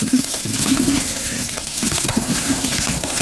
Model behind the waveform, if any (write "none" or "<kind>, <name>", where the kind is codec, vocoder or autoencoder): codec, SNAC